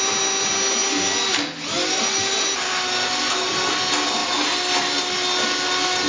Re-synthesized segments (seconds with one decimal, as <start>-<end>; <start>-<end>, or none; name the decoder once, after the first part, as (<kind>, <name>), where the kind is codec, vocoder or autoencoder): none